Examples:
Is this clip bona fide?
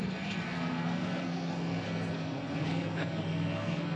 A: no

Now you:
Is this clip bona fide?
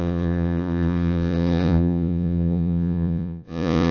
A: no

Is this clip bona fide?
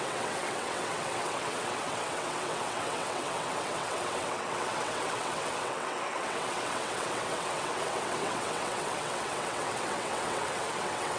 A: no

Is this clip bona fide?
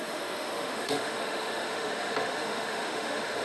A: no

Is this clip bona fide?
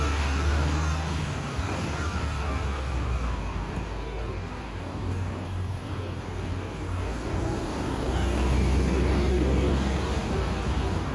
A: no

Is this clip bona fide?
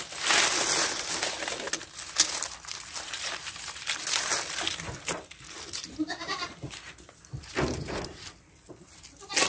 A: yes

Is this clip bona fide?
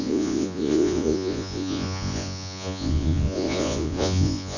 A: no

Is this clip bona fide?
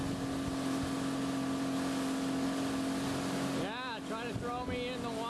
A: yes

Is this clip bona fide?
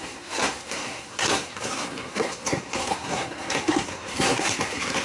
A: no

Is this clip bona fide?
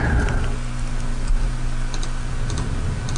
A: yes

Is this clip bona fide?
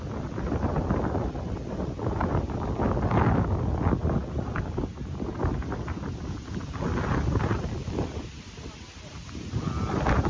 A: yes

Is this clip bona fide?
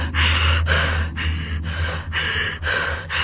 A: yes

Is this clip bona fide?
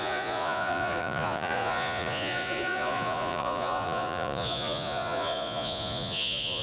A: no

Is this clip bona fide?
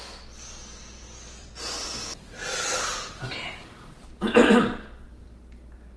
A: yes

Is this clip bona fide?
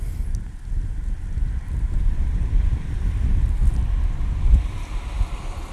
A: no